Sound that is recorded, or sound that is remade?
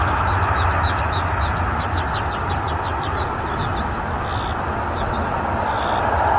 recorded